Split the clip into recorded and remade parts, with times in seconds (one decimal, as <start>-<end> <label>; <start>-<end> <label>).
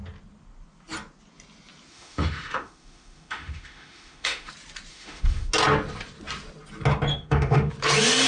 0.0-1.9 recorded; 1.9-4.5 remade; 4.5-4.9 recorded; 4.9-5.5 remade; 5.5-7.1 recorded; 7.1-7.7 remade; 7.7-8.3 recorded